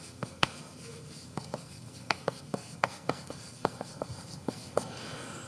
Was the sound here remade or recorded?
remade